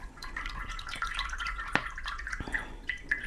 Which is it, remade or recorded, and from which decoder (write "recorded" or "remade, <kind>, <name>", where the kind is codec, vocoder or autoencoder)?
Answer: remade, vocoder, Vocos